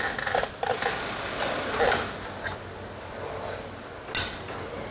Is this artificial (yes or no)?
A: no